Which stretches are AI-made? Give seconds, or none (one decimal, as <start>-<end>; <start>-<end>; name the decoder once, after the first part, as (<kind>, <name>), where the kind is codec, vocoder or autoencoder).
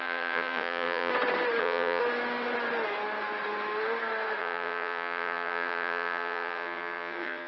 0.0-1.1 (vocoder, WaveNeXt); 1.6-2.0; 4.4-7.5